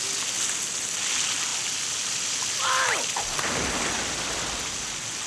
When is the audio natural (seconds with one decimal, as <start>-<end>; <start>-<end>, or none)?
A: 0.0-5.3